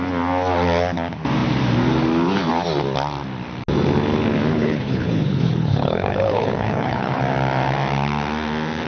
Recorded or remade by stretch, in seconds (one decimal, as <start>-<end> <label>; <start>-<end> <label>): 0.0-4.5 recorded; 4.5-7.2 remade; 7.2-8.9 recorded